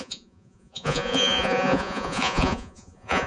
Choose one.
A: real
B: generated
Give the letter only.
B